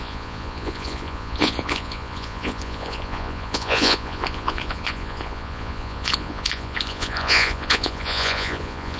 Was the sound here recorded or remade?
remade